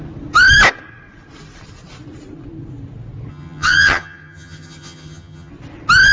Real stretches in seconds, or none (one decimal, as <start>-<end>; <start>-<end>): 0.0-3.3; 5.5-6.1